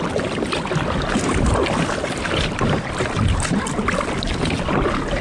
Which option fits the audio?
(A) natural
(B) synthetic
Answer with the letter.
A